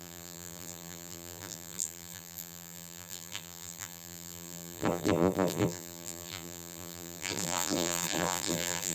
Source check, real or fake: fake